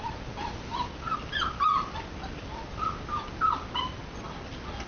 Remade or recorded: recorded